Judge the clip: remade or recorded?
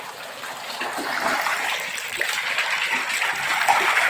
recorded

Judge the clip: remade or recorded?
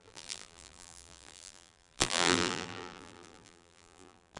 remade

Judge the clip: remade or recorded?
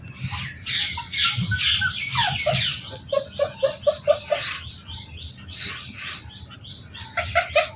remade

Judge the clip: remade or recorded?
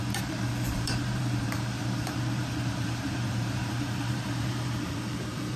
remade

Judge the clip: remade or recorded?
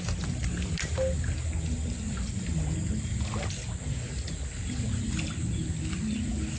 recorded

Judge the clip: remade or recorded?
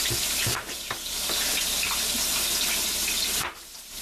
recorded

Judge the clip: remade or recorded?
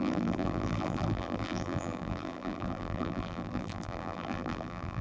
remade